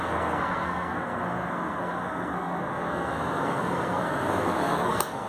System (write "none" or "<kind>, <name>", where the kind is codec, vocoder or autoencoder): codec, SNAC